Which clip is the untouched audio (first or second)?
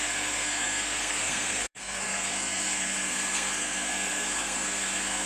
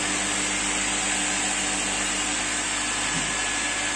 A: second